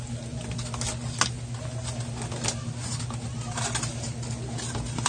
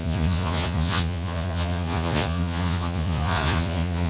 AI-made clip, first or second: second